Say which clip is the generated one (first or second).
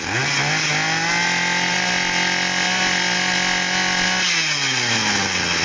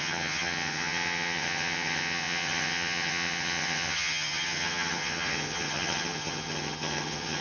second